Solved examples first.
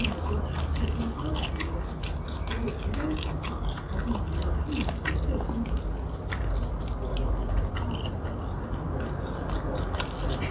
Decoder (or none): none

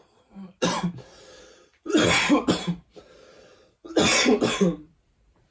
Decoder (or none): none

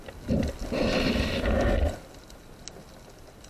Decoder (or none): none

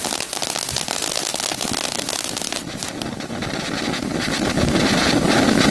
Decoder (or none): none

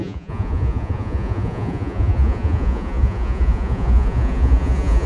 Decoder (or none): vocoder, Vocos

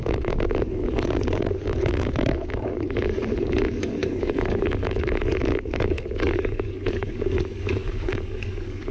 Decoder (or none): codec, DAC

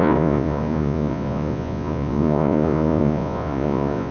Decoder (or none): vocoder, Vocos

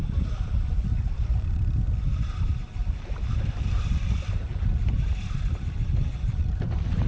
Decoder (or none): vocoder, BigVGAN v2